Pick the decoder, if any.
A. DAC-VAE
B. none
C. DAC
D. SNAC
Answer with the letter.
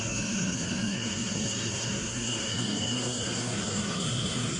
D